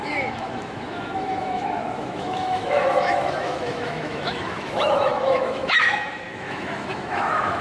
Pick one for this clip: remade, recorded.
remade